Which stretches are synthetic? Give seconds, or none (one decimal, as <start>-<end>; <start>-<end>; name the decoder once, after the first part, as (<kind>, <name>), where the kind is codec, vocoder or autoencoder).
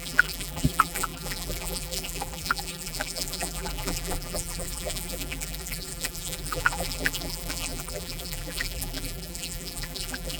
0.0-10.4 (vocoder, BigVGAN v2)